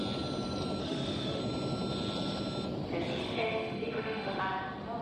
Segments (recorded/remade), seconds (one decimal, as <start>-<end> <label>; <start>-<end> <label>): 0.0-0.8 recorded; 0.8-1.4 remade; 1.4-3.2 recorded; 3.2-4.4 remade; 4.4-5.0 recorded